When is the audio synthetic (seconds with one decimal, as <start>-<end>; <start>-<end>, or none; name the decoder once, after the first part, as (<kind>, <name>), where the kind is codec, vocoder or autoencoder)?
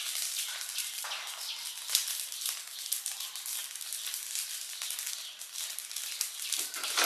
none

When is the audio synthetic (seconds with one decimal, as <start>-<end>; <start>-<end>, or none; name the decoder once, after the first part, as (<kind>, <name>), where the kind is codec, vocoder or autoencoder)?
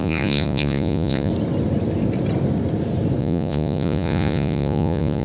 0.0-1.3 (vocoder, Vocos); 3.2-5.2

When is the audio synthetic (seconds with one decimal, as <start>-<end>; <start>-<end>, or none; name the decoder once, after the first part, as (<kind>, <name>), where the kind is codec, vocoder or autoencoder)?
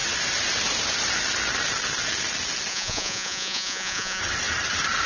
2.7-4.2 (vocoder, Vocos)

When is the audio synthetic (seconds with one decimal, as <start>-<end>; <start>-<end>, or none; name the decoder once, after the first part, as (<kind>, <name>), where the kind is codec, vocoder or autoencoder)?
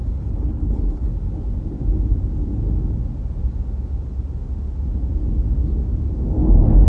0.0-1.1 (codec, HILCodec)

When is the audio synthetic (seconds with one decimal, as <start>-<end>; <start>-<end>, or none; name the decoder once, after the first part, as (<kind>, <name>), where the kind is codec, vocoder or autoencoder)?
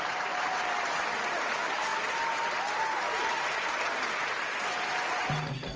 none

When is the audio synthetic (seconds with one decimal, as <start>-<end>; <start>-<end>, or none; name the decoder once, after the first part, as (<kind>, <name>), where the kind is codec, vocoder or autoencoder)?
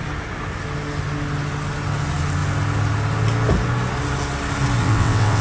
4.8-5.4 (vocoder, WaveNeXt)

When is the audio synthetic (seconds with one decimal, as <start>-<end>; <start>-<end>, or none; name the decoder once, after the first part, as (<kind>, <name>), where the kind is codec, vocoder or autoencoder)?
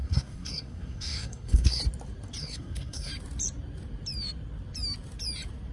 0.0-1.8 (codec, SNAC); 2.4-3.1